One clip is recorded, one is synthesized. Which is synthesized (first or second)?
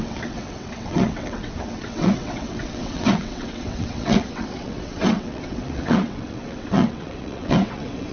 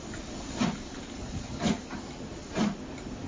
first